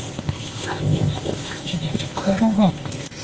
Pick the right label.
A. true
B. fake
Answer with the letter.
B